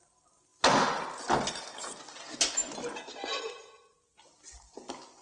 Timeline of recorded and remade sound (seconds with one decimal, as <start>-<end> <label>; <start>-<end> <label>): 0.0-5.2 recorded